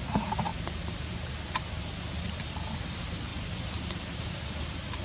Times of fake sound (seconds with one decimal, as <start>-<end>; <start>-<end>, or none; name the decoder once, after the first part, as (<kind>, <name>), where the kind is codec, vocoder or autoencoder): 0.0-3.3 (vocoder, BigVGAN v2); 3.9-5.0